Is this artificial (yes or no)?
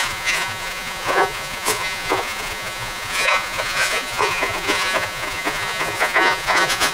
yes